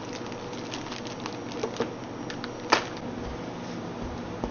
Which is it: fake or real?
real